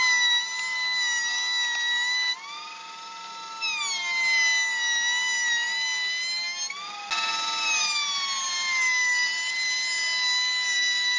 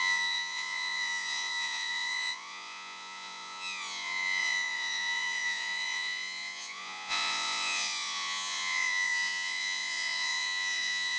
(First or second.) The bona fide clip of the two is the first